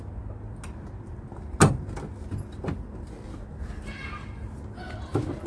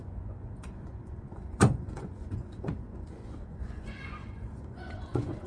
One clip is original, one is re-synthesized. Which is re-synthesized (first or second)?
second